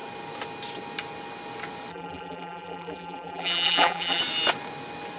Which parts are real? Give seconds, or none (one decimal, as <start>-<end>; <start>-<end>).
0.0-1.9; 4.2-5.2